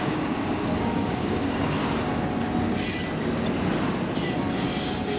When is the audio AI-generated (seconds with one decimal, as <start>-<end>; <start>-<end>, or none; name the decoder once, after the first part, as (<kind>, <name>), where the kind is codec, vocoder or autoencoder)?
0.0-1.8 (codec, DAC)